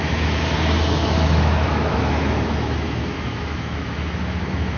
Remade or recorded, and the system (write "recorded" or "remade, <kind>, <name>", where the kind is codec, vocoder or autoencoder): remade, autoencoder, DAC-VAE